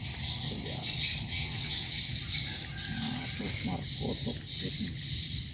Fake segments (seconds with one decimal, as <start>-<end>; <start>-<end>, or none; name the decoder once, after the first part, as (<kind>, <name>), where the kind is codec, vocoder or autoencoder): 1.3-2.0 (vocoder, WaveNeXt)